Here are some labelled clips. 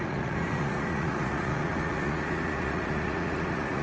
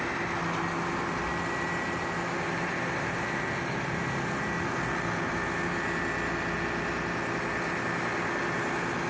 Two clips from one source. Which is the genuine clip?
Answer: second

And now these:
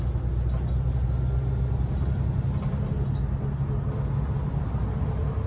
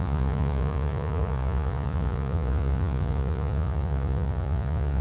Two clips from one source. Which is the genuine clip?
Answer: first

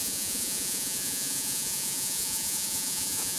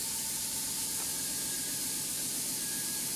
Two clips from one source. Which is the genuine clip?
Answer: second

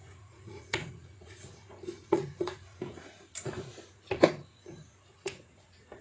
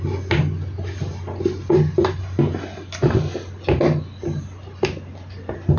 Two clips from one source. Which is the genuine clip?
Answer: second